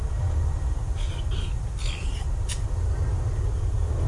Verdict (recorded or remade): recorded